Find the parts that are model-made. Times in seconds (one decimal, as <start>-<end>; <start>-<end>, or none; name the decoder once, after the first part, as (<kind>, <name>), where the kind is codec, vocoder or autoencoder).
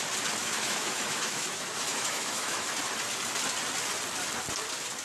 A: 0.4-2.7 (autoencoder, DAC-VAE)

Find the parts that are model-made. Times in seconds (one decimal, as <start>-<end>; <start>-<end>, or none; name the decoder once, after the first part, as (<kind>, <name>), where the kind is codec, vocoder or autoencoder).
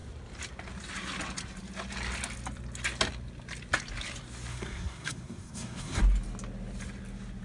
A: 4.5-6.0 (codec, SNAC)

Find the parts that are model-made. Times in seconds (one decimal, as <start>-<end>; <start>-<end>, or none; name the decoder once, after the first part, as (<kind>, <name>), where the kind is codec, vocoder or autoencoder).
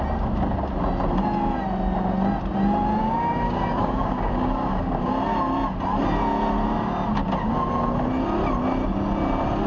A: 3.0-5.1 (codec, DAC)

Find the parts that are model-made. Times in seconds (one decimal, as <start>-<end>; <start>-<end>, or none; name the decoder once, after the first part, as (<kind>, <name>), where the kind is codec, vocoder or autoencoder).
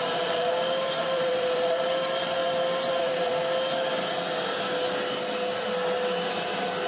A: 0.0-2.4 (vocoder, BigVGAN v2); 2.9-3.3